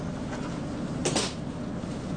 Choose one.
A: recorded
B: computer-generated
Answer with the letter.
A